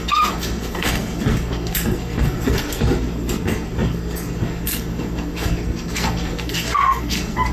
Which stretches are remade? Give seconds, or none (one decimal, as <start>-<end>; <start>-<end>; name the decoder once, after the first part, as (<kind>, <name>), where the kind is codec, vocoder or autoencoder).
0.0-7.5 (codec, SNAC)

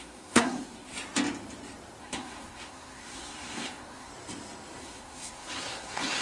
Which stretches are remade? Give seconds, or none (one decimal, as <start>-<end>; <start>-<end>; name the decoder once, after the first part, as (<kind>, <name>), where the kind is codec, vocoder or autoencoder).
0.0-0.9 (codec, SNAC); 2.0-4.1; 4.8-6.2